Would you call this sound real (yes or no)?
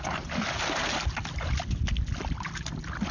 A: yes